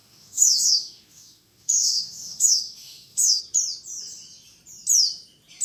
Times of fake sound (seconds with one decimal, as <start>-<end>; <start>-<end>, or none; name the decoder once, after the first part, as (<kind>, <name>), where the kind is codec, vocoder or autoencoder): 0.0-3.4 (autoencoder, DAC-VAE)

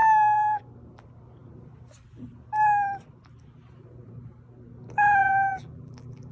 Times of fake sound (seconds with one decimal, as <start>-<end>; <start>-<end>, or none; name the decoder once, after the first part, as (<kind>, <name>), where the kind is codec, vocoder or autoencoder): 0.0-0.6 (vocoder, BigVGAN v2); 5.2-6.3

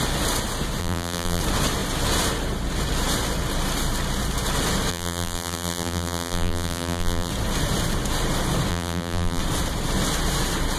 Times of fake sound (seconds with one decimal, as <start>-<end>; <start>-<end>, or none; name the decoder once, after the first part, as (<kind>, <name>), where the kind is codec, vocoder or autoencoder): 0.8-1.4 (vocoder, BigVGAN v2); 4.9-7.3; 8.7-9.4

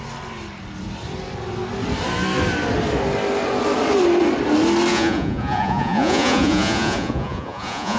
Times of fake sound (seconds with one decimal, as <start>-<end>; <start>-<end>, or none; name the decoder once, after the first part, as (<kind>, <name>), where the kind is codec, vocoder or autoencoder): 4.9-8.0 (vocoder, Vocos)

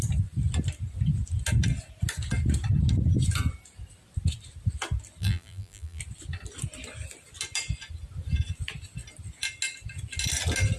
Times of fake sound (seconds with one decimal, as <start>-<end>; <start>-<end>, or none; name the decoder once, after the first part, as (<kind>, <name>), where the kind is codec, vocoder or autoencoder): 5.2-6.0 (vocoder, BigVGAN v2)

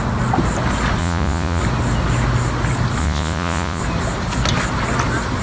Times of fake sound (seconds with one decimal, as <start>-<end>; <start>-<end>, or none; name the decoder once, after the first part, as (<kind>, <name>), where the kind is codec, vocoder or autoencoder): 1.0-1.6 (vocoder, Vocos); 3.0-3.8

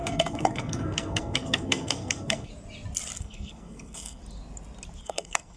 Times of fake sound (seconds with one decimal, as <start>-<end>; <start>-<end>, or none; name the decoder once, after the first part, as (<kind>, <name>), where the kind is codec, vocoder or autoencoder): 0.0-2.5 (codec, SNAC); 3.2-4.2; 5.0-5.6

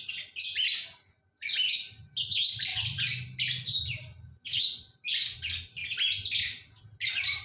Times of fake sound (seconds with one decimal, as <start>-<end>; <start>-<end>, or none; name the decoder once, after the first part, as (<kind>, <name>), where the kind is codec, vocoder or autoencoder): none